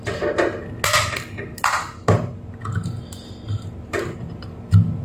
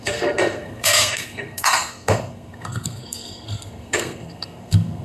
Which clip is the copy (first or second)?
second